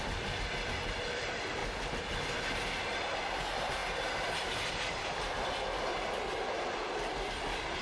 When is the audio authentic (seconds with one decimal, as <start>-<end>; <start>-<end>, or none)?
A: 3.8-4.7; 5.9-6.8